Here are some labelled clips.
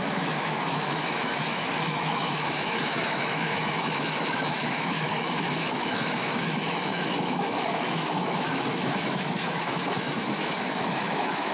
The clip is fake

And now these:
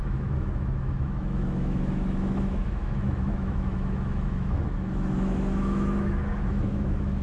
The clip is fake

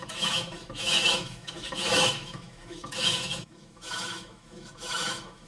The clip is fake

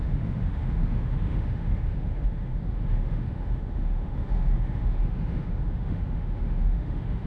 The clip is fake